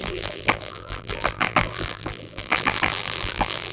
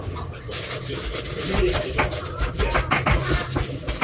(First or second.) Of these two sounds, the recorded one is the second